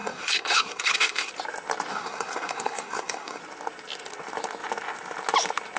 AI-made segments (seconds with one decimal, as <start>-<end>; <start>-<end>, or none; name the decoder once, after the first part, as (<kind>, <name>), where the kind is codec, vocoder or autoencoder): 0.0-1.3 (codec, SNAC); 1.9-3.4